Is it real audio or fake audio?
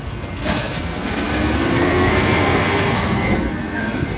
fake